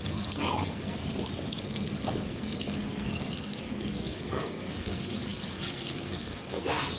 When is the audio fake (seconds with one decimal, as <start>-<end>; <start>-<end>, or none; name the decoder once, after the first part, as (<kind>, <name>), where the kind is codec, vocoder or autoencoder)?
0.0-1.0 (codec, SNAC); 1.6-7.0